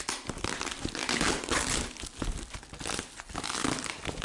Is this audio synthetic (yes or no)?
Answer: no